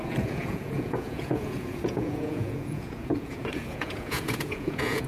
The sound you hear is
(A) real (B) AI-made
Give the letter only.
B